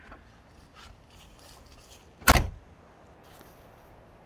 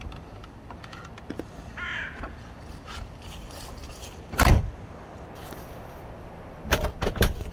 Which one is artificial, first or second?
second